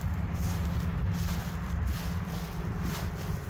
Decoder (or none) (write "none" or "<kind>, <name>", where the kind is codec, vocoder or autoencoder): none